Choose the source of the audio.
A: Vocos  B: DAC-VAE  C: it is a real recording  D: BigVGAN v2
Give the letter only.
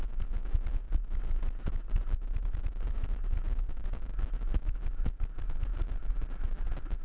C